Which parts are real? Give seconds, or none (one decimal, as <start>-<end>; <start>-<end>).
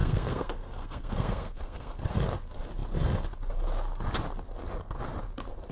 2.1-5.7